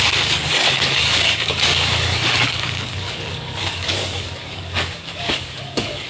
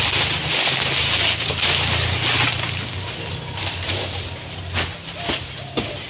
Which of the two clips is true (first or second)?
second